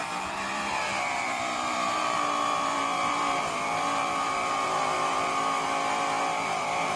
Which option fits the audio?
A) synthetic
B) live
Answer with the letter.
A